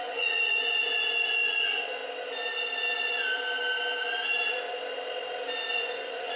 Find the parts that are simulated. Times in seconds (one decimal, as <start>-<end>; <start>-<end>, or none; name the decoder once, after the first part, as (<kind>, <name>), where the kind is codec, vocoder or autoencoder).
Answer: 0.0-2.0 (vocoder, Vocos); 5.8-6.4